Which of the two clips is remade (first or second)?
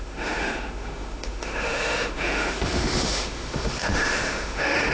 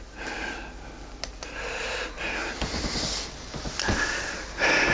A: first